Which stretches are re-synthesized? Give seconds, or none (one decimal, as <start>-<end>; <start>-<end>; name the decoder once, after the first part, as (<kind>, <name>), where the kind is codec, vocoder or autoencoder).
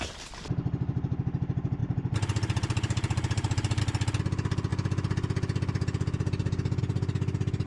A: 1.8-3.8 (vocoder, BigVGAN v2)